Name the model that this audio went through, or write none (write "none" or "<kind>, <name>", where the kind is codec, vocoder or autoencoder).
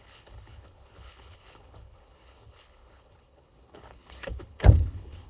codec, HILCodec